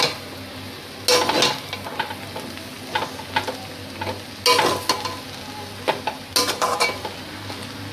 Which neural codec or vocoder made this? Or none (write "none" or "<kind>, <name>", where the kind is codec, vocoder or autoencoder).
none